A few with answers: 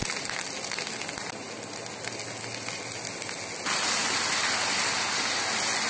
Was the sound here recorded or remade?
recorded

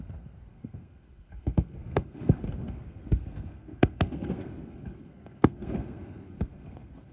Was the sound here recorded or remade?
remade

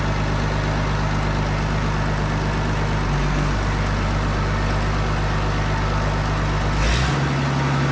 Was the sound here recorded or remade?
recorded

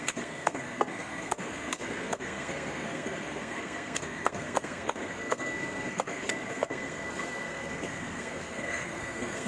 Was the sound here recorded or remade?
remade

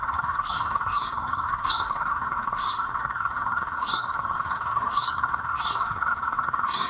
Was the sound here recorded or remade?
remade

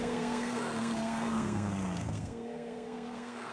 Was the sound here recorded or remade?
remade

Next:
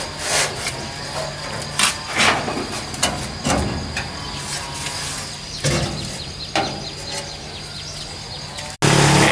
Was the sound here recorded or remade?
recorded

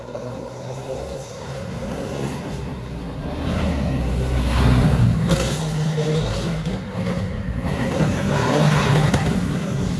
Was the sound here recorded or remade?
remade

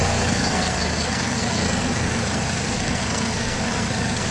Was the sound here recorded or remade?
remade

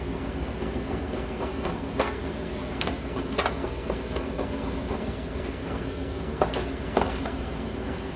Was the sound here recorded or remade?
remade